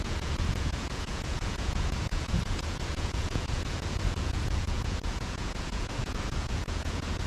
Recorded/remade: remade